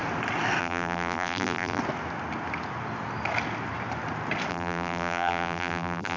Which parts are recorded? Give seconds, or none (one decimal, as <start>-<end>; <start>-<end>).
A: 0.0-0.6; 1.8-4.5